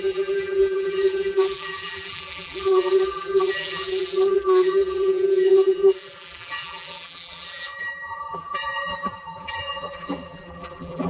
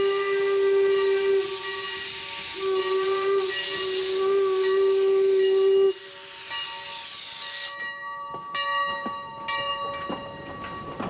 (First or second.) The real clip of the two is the second